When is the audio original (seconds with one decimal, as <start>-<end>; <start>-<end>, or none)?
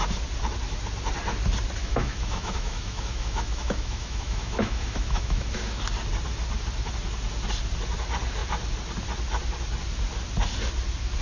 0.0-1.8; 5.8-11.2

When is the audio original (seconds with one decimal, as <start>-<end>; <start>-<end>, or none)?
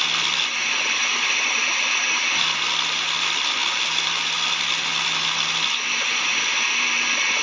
0.0-7.4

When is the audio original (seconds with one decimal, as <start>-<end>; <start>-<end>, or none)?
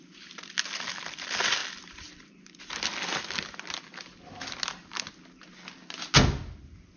0.0-7.0